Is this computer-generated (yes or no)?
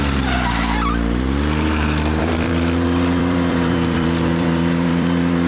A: yes